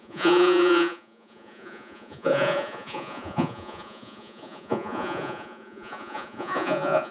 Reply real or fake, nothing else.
fake